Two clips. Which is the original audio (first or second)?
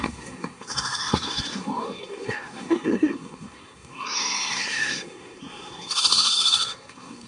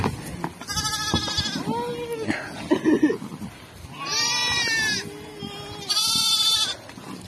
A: second